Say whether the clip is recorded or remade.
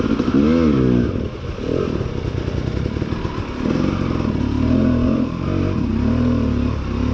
recorded